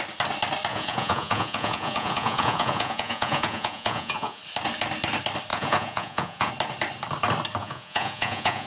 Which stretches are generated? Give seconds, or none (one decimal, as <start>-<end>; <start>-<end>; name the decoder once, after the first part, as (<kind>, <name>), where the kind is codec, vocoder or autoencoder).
0.7-4.4 (vocoder, Vocos); 5.5-6.5; 7.6-8.7